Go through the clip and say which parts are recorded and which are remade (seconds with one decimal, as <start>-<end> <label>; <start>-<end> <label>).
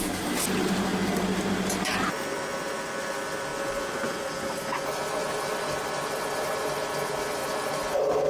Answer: 0.0-8.3 recorded